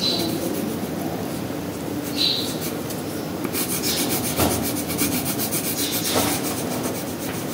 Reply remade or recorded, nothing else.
recorded